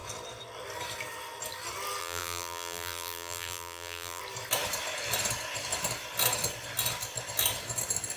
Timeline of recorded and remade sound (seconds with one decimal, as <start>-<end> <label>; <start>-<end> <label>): 0.0-2.0 recorded; 2.0-4.2 remade; 4.2-8.2 recorded